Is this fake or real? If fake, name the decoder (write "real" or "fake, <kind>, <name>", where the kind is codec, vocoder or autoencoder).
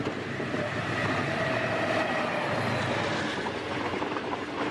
real